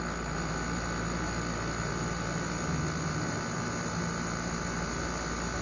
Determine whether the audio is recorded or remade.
recorded